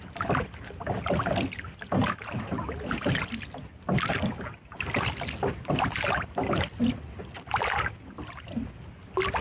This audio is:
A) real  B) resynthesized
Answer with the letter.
A